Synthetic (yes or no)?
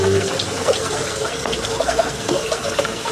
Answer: yes